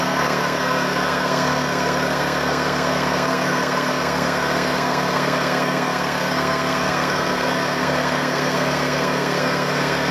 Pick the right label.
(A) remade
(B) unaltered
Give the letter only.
A